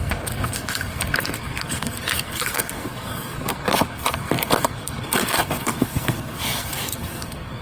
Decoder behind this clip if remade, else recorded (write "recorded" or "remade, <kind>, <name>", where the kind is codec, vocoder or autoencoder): remade, codec, SNAC